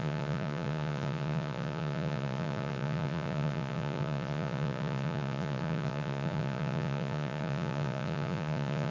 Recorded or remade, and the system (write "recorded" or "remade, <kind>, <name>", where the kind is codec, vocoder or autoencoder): remade, vocoder, Vocos